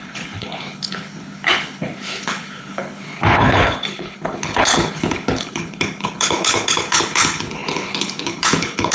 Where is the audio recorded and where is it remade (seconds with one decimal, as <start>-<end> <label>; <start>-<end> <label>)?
0.0-8.9 remade